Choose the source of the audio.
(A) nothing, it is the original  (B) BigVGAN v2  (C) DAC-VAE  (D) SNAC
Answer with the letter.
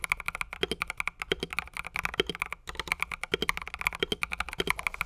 A